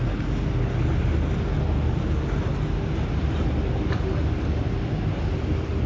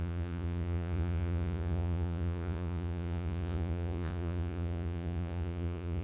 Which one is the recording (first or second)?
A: first